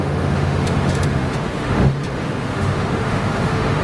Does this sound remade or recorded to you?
remade